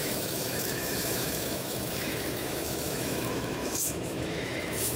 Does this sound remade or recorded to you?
remade